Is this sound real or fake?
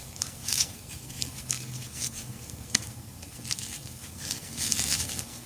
fake